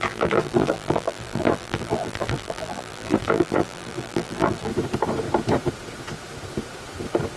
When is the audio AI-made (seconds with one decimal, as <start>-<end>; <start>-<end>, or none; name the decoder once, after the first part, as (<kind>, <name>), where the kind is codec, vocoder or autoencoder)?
0.0-4.7 (vocoder, BigVGAN v2)